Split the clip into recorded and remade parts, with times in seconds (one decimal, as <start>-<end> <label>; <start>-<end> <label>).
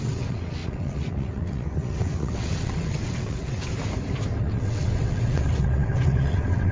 0.0-3.7 remade; 3.7-4.4 recorded; 4.4-6.7 remade